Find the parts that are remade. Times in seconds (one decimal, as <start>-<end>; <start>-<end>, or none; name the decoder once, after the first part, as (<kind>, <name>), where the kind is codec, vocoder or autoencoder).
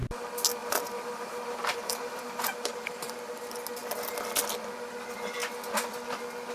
0.6-3.3 (vocoder, BigVGAN v2)